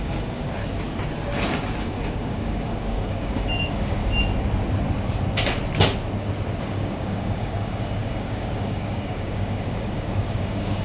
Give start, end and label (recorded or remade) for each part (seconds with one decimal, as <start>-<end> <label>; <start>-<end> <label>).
0.0-0.6 remade; 0.6-1.8 recorded; 1.8-4.0 remade; 4.0-6.6 recorded; 6.6-10.8 remade